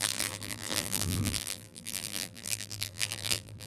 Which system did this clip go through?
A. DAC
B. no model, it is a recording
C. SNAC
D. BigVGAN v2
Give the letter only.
D